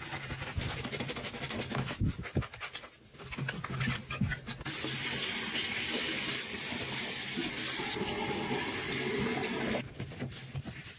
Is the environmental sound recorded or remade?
recorded